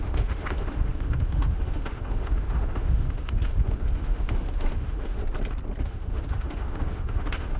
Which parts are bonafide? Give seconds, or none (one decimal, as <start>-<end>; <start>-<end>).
5.2-5.8